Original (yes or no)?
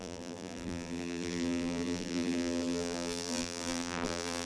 no